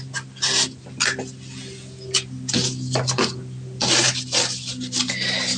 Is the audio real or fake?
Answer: real